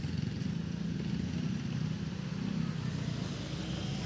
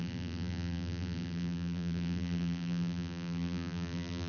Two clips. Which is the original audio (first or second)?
first